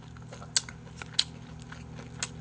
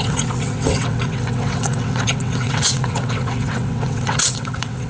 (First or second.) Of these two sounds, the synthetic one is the second